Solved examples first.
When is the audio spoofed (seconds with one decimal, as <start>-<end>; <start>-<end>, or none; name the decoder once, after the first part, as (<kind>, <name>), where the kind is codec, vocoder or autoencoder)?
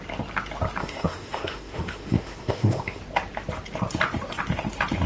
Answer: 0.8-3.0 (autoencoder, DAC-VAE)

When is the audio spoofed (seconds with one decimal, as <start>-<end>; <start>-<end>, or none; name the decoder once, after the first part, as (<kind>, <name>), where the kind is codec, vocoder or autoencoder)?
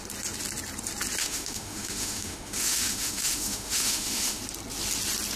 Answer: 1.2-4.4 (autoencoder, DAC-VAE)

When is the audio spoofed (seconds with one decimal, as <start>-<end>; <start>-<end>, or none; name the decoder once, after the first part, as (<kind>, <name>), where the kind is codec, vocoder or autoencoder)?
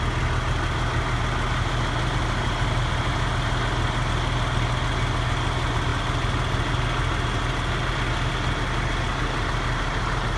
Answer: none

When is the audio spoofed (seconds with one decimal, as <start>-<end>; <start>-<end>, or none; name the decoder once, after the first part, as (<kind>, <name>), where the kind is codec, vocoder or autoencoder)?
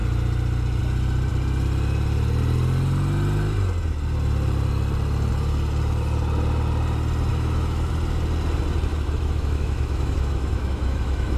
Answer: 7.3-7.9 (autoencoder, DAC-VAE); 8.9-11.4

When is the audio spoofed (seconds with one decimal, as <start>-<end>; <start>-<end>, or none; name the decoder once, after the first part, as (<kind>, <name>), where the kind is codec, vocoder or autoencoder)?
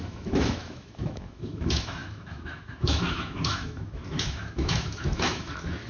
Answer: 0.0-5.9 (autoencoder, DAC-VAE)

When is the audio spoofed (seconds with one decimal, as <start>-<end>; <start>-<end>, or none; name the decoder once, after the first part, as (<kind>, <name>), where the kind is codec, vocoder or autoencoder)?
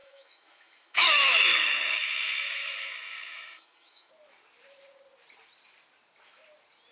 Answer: 0.0-4.1 (autoencoder, DAC-VAE)